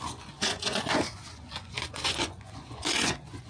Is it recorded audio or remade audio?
remade